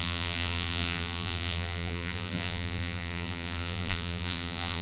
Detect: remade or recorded remade